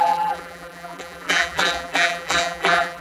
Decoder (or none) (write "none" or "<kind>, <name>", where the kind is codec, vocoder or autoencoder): vocoder, BigVGAN v2